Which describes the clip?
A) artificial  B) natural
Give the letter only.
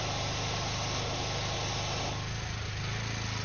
B